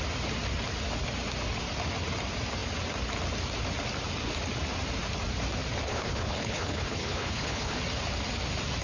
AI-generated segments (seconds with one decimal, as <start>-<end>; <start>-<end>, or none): 5.9-7.8